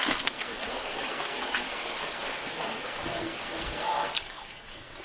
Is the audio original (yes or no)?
no